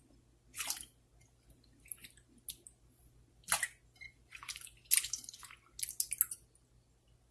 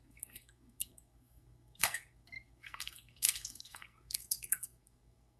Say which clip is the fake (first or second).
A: second